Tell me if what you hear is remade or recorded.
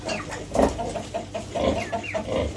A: recorded